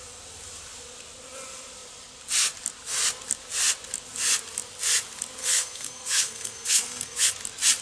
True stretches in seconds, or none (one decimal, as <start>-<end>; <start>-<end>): 0.0-5.4; 7.3-7.8